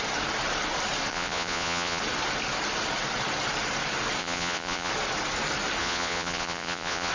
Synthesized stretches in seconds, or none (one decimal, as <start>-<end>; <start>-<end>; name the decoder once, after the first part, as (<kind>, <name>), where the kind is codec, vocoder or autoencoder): 1.1-2.0 (vocoder, Vocos); 4.2-4.9; 5.8-7.1